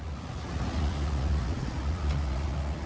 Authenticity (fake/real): fake